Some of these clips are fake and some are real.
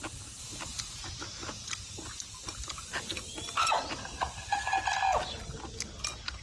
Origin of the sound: real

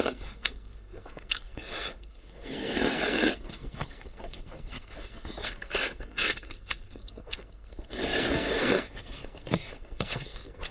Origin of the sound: fake